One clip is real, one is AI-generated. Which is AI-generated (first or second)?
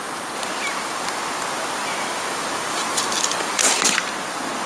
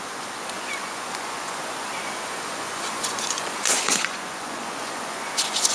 second